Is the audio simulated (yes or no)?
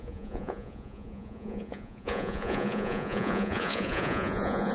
yes